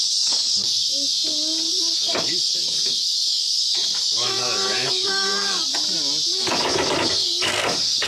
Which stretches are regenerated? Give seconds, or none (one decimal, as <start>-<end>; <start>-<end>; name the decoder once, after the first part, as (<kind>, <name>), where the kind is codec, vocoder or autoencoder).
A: 0.0-0.9 (codec, DAC); 1.7-5.7; 6.4-8.1